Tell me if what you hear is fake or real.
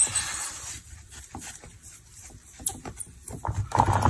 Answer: fake